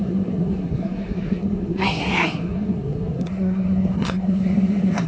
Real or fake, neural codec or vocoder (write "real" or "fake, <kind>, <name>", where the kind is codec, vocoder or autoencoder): fake, codec, SNAC